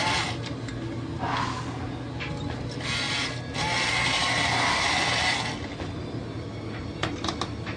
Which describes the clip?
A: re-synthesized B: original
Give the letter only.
B